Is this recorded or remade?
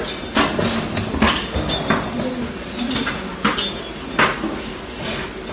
recorded